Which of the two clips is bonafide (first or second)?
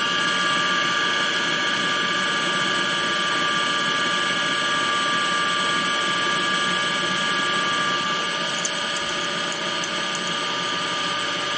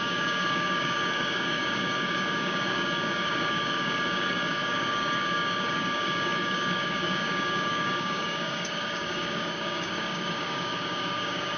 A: first